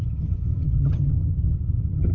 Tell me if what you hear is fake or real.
fake